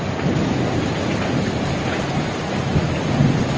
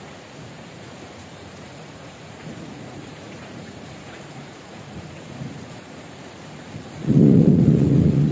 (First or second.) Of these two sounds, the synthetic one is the second